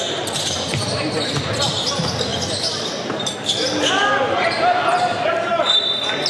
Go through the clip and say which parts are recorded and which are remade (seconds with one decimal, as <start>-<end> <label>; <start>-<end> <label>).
0.0-6.3 recorded